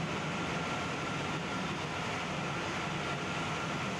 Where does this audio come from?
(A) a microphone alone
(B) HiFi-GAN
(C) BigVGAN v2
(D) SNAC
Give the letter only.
C